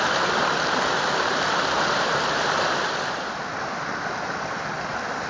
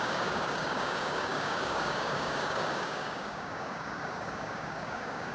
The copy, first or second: second